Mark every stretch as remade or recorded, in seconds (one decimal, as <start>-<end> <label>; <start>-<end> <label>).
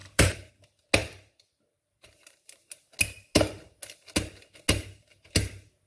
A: 0.0-0.5 remade; 0.5-1.0 recorded; 1.0-2.7 remade; 2.7-5.9 recorded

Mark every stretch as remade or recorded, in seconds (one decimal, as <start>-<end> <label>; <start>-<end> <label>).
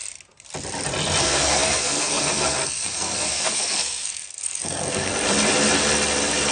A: 0.0-1.2 recorded; 1.2-5.1 remade; 5.1-6.5 recorded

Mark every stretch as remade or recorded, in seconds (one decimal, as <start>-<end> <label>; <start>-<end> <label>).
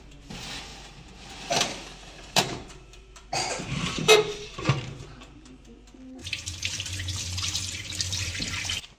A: 0.0-0.7 recorded; 0.7-5.5 remade; 5.5-6.2 recorded; 6.2-7.9 remade; 7.9-9.0 recorded